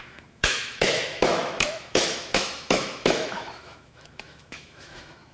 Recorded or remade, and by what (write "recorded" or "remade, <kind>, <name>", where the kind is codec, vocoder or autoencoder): remade, autoencoder, DAC-VAE